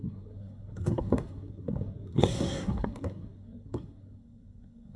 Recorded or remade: remade